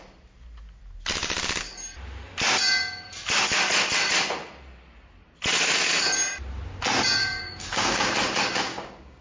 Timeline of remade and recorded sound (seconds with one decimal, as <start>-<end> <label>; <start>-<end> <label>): 0.0-7.2 recorded; 7.2-8.1 remade; 8.1-8.7 recorded; 8.7-9.2 remade